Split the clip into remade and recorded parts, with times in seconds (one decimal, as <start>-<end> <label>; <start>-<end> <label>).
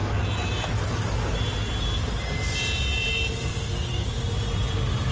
0.0-3.5 recorded; 3.5-4.2 remade; 4.2-5.1 recorded